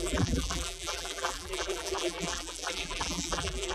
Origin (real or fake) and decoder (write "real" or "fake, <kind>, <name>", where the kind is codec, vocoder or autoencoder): fake, vocoder, BigVGAN v2